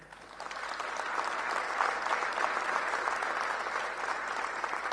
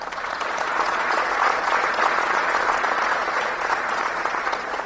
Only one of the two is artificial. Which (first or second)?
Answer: second